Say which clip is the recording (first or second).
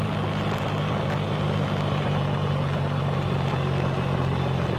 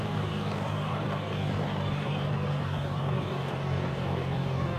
first